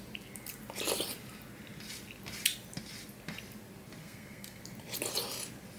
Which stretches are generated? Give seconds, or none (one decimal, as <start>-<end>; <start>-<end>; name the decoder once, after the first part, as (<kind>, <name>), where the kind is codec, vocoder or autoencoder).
4.0-4.6 (codec, SNAC)